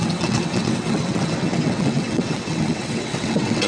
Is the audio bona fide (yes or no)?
no